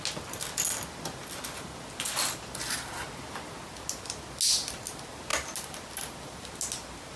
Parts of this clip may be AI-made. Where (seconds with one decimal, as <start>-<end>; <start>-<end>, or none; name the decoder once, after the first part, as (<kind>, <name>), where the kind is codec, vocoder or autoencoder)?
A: none